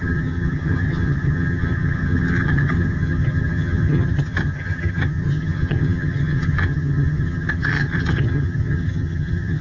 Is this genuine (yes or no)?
no